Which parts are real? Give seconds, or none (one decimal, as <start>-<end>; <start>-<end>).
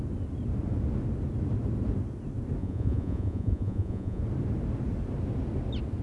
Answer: 0.0-2.6; 4.2-6.0